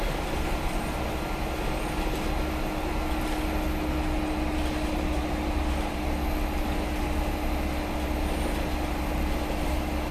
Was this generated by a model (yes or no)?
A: no